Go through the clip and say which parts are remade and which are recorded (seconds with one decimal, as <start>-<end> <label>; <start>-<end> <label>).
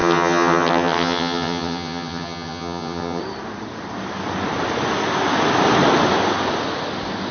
0.0-3.2 remade; 3.2-7.3 recorded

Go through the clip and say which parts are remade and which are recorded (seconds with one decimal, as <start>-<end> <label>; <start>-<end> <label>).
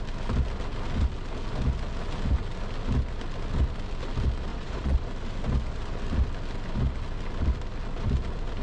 0.0-4.5 recorded; 4.5-5.1 remade; 5.1-8.6 recorded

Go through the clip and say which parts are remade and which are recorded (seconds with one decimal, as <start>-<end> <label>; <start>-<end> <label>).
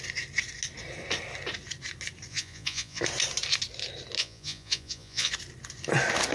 0.0-2.3 recorded; 2.3-3.0 remade; 3.0-4.2 recorded; 4.2-5.3 remade; 5.3-6.3 recorded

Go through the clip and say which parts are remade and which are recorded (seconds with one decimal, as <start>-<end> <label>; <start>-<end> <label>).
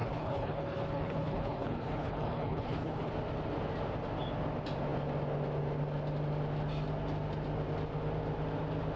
0.0-3.1 remade; 3.1-9.0 recorded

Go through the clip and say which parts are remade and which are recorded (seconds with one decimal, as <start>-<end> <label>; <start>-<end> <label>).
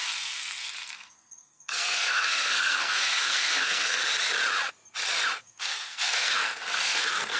0.0-4.0 remade; 4.0-5.4 recorded; 5.4-7.4 remade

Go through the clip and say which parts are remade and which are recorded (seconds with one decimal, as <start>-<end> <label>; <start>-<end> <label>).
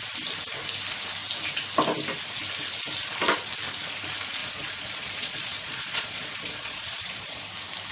0.0-4.4 recorded; 4.4-7.4 remade; 7.4-7.9 recorded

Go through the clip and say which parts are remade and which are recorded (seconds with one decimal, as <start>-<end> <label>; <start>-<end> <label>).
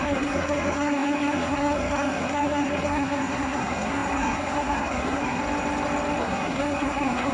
0.0-5.4 remade; 5.4-6.2 recorded; 6.2-7.3 remade